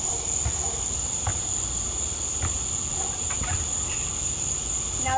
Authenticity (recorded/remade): recorded